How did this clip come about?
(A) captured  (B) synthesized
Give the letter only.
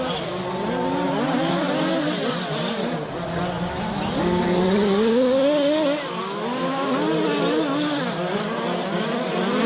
A